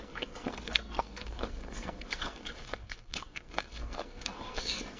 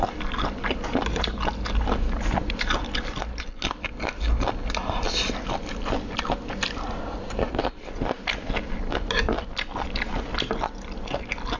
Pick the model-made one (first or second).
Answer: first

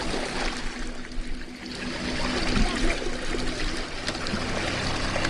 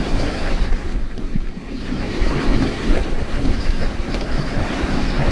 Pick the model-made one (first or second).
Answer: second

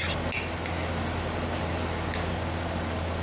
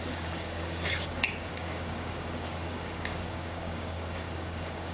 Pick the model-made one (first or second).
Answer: second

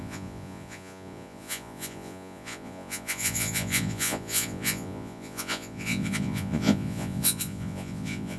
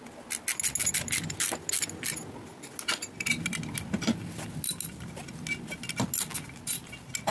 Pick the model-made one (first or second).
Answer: first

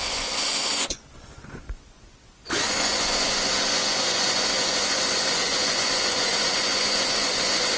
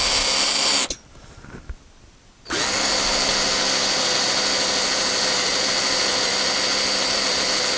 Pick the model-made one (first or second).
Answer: first